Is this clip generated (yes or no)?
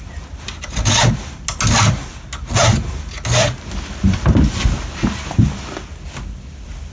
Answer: no